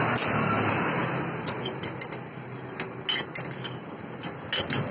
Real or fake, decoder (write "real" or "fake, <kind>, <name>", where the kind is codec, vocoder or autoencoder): real